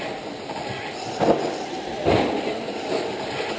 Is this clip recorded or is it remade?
recorded